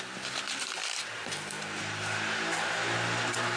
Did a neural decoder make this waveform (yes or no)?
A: no